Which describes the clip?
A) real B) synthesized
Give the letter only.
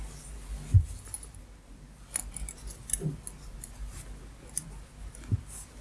A